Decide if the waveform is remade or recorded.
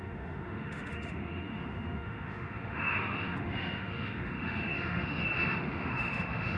remade